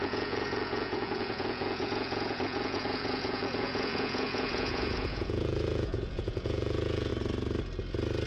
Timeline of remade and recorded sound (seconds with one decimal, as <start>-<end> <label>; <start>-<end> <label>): 0.0-7.1 remade; 7.1-8.3 recorded